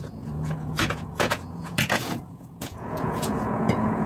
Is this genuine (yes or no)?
no